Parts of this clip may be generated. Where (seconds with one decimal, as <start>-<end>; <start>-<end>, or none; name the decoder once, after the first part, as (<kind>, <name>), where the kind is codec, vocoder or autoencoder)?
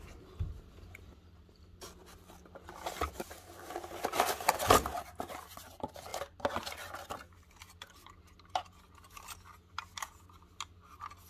none